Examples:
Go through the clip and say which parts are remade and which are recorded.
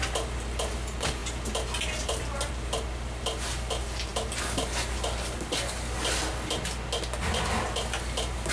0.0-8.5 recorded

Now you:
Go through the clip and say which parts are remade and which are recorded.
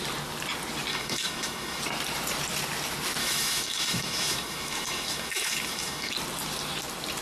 0.0-0.9 recorded; 0.9-1.8 remade; 1.8-3.2 recorded; 3.2-6.1 remade; 6.1-7.2 recorded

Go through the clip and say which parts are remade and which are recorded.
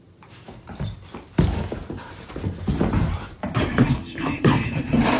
0.0-1.8 recorded; 1.8-5.2 remade